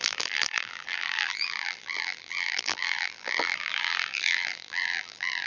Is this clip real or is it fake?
fake